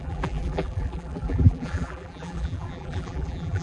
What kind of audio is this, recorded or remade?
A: remade